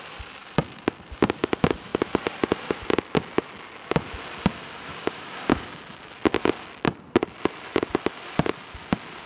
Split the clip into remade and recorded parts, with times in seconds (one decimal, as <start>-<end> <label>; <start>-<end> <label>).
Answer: 0.0-4.9 recorded; 4.9-5.8 remade; 5.8-9.3 recorded